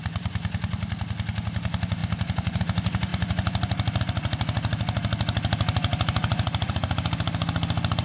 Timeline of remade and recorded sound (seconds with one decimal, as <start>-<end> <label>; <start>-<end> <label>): 0.0-8.0 recorded